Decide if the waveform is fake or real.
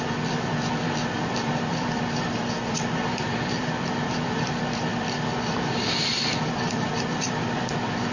fake